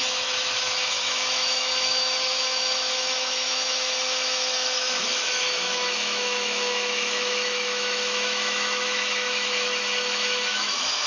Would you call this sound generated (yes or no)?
yes